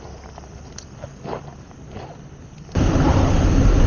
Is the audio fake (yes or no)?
no